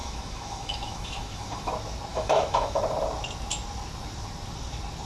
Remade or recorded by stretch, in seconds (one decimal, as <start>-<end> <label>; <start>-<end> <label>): 0.0-1.7 remade; 1.7-2.1 recorded; 2.1-2.8 remade; 2.8-5.1 recorded